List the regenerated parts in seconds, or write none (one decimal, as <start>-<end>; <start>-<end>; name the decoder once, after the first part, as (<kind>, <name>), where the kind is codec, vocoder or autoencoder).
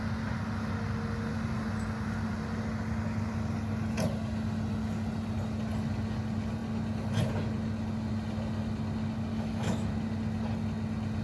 9.3-9.9 (autoencoder, DAC-VAE)